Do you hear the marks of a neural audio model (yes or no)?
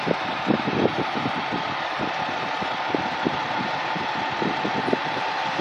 no